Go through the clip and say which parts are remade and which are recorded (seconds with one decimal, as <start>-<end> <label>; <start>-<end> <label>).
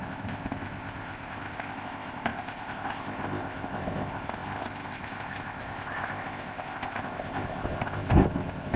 0.0-8.8 remade